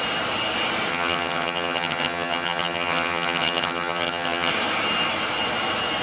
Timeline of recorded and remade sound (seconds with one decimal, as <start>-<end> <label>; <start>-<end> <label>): 0.0-0.9 recorded; 0.9-4.5 remade; 4.5-6.0 recorded